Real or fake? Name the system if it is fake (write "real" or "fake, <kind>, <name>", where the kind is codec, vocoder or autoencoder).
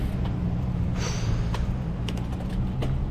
real